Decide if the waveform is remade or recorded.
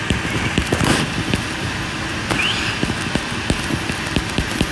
recorded